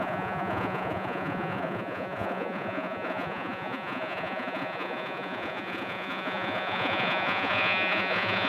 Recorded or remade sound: remade